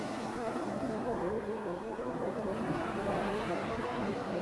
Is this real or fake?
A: fake